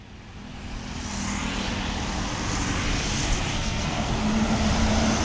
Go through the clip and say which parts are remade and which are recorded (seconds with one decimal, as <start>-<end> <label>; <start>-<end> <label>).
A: 0.0-3.5 recorded; 3.5-4.1 remade; 4.1-5.2 recorded